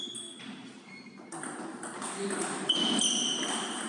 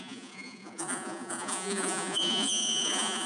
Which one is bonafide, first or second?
first